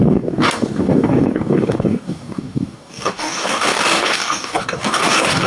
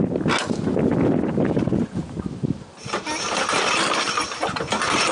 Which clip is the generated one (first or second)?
first